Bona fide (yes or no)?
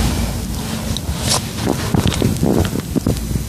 yes